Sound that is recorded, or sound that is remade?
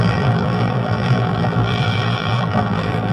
remade